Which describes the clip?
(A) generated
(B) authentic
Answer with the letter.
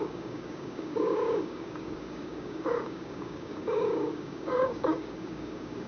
A